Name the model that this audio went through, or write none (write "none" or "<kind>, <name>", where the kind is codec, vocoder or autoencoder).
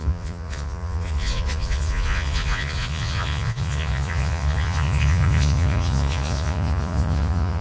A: vocoder, Vocos